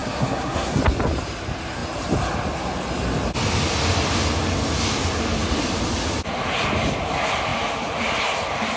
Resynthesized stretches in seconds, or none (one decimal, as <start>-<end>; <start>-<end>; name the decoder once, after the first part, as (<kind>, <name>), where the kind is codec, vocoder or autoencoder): 0.0-0.8 (codec, SNAC)